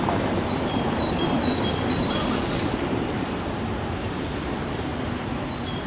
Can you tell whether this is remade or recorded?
remade